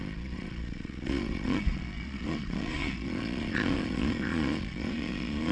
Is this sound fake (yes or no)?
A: yes